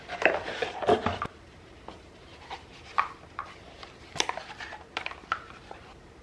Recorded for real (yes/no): no